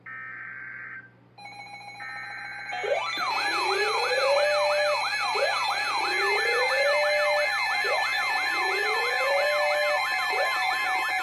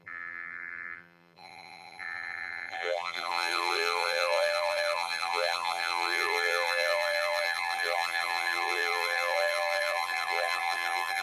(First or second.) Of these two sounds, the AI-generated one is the second